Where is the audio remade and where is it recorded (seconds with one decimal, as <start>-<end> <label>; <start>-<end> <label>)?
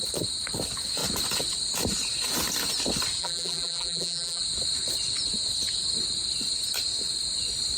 0.0-3.2 recorded; 3.2-4.4 remade; 4.4-7.8 recorded